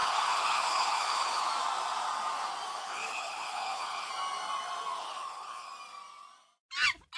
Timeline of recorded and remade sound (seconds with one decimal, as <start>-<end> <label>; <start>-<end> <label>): 0.0-1.5 remade; 1.5-2.7 recorded; 2.7-4.1 remade; 4.1-5.0 recorded; 5.0-5.7 remade; 5.7-7.2 recorded